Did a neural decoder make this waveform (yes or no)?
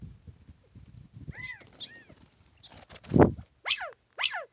no